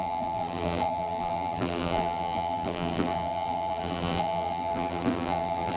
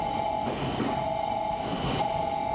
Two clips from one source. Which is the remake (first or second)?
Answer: first